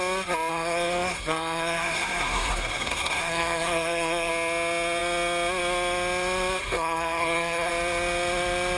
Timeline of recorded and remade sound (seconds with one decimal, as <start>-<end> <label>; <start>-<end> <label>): 0.0-0.5 recorded; 0.5-4.3 remade; 4.3-6.6 recorded; 6.6-7.7 remade; 7.7-8.8 recorded